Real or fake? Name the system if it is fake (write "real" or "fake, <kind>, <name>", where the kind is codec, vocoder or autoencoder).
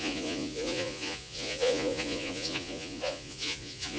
fake, vocoder, Vocos